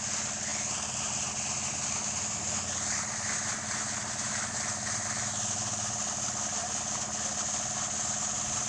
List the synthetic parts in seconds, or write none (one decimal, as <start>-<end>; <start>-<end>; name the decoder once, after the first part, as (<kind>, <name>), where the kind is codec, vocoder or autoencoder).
none